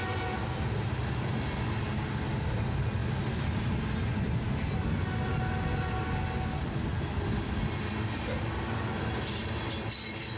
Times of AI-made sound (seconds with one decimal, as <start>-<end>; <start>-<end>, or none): 3.0-3.9